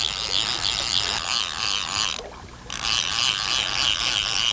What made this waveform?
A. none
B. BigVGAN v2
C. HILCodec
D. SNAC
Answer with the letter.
A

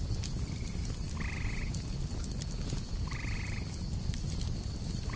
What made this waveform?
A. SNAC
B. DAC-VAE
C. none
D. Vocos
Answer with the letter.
C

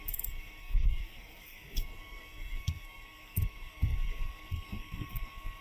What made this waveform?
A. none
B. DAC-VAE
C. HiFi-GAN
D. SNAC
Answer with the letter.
D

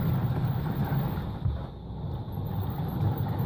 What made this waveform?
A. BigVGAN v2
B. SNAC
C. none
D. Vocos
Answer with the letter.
C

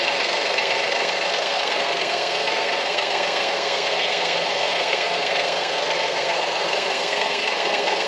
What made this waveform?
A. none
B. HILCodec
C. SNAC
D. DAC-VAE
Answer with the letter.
C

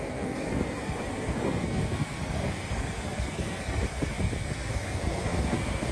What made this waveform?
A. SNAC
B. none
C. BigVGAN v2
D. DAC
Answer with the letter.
A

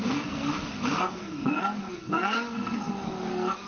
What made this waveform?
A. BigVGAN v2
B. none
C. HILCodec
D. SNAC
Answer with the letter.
D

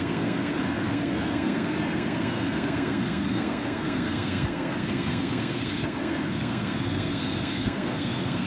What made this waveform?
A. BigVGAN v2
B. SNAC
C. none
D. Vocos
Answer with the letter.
B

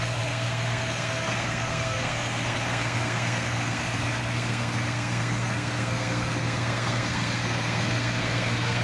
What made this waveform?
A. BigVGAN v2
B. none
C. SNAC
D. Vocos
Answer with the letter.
C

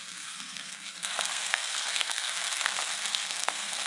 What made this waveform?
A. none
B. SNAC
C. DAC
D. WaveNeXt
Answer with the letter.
B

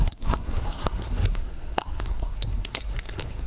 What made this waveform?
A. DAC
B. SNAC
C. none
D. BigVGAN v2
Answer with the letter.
B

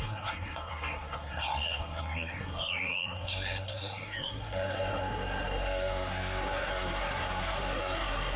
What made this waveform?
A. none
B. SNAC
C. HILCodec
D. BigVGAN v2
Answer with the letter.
B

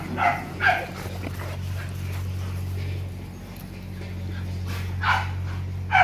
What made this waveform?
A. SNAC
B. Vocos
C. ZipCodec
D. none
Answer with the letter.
D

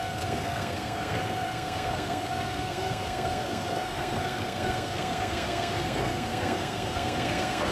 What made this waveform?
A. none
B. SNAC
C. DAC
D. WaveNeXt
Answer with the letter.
B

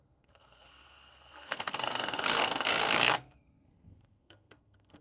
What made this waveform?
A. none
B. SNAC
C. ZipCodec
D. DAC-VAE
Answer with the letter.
B